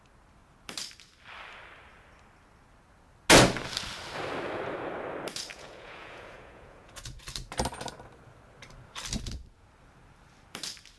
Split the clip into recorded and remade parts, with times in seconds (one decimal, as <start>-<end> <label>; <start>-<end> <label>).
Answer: 0.0-5.5 recorded; 5.5-7.2 remade; 7.2-11.0 recorded